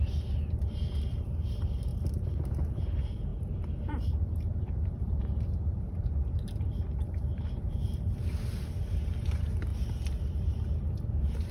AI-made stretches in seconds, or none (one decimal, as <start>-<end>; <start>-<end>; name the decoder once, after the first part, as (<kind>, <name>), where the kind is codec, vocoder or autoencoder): 0.0-1.9 (vocoder, BigVGAN v2); 2.7-9.7